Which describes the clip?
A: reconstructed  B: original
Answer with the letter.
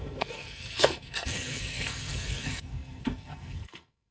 A